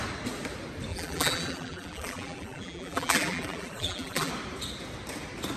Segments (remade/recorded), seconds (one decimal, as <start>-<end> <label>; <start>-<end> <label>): 0.0-0.9 recorded; 0.9-4.3 remade; 4.3-5.6 recorded